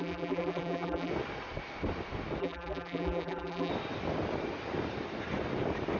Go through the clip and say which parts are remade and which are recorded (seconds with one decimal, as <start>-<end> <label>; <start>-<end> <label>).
0.0-1.1 remade; 1.1-2.4 recorded; 2.4-3.7 remade; 3.7-6.0 recorded